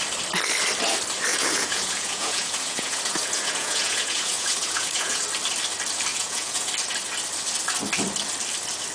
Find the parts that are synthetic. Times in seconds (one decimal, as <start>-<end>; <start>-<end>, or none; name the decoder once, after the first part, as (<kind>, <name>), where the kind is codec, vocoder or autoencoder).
1.3-5.2 (vocoder, Vocos); 6.1-6.7